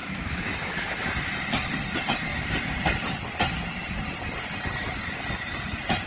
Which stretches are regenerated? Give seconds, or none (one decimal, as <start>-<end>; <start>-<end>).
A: 0.0-1.1